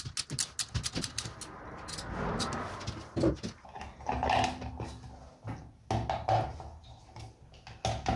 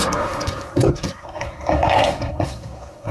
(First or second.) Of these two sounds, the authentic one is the first